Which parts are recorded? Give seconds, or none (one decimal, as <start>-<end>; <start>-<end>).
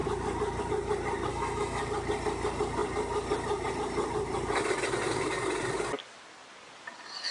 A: 0.0-1.3; 1.8-7.3